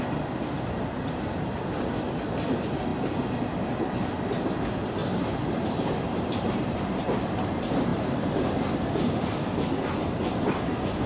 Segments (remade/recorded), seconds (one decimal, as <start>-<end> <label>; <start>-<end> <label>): 0.0-5.0 recorded; 5.0-7.0 remade; 7.0-11.1 recorded